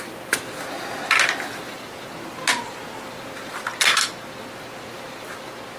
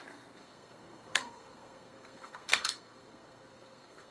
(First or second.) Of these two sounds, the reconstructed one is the second